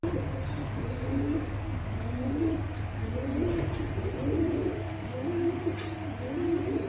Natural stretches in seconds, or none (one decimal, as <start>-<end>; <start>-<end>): 0.0-0.6; 3.1-4.6; 5.6-6.9